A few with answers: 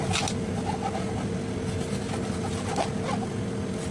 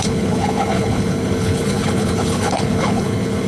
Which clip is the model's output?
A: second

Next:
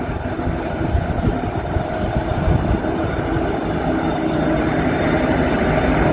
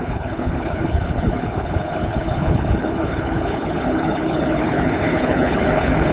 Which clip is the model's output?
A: second